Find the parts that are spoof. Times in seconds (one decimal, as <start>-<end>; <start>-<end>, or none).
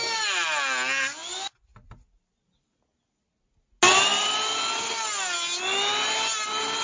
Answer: none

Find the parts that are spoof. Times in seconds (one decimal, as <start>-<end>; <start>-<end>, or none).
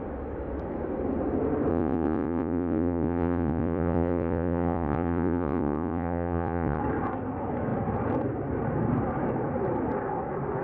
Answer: 1.7-6.8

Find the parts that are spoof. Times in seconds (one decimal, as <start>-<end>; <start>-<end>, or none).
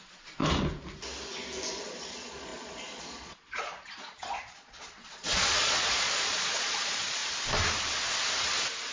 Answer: 0.0-0.4; 1.7-7.2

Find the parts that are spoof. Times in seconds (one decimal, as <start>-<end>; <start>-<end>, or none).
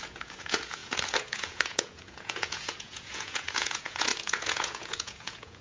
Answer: 0.0-5.6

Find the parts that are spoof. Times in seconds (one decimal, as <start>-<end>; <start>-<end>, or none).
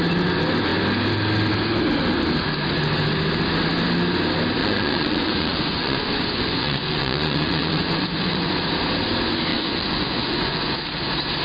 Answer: 4.6-8.5; 9.5-10.8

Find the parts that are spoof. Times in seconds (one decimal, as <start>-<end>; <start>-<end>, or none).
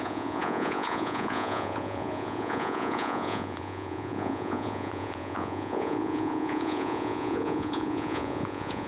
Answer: 0.0-8.9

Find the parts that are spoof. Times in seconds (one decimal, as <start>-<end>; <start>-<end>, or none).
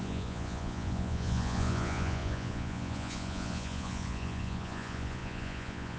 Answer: 0.0-6.0